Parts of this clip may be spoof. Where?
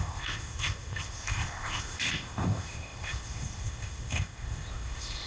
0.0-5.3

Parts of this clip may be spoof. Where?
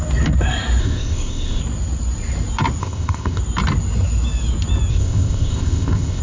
0.8-1.6; 2.8-3.4; 4.9-6.2